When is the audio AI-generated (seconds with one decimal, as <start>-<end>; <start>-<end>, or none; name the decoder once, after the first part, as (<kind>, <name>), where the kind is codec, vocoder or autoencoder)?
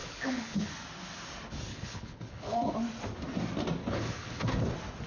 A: 0.0-0.7 (codec, HILCodec); 1.7-2.7; 3.8-4.5